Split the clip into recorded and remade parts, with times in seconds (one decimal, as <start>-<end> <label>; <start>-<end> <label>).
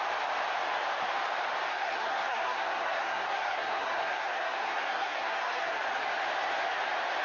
0.0-1.7 recorded; 1.7-5.8 remade; 5.8-7.2 recorded